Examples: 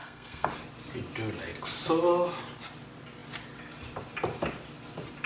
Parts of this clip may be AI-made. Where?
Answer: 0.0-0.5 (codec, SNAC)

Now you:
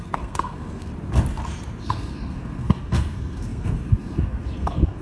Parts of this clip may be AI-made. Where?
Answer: 0.0-0.9 (codec, SNAC); 1.8-5.0

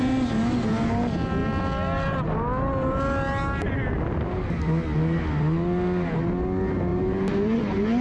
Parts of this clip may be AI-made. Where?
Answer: none